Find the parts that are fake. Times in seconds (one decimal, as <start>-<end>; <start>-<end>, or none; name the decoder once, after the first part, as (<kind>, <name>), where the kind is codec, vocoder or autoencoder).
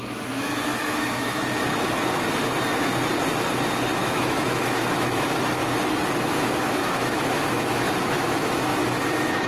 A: 0.0-1.4 (autoencoder, DAC-VAE); 4.0-5.6; 6.1-9.5